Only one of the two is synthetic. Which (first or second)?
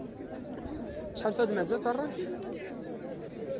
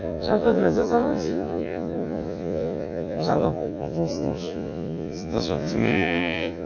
second